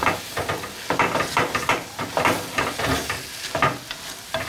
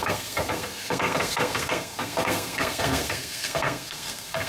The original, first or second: first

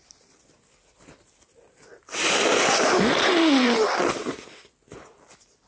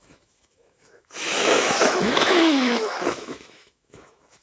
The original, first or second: first